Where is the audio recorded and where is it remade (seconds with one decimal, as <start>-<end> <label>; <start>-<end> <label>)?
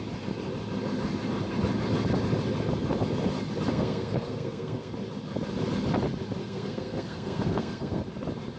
0.0-3.7 recorded; 3.7-4.9 remade; 4.9-6.4 recorded; 6.4-8.0 remade; 8.0-8.6 recorded